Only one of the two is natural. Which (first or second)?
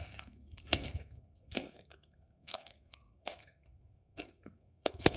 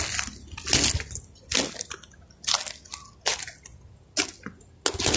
second